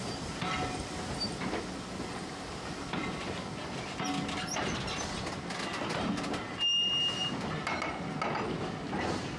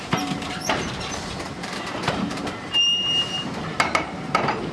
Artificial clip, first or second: second